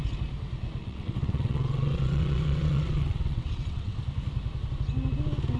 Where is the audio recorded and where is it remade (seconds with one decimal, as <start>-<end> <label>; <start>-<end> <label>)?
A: 0.0-0.8 recorded; 0.8-4.0 remade; 4.0-5.6 recorded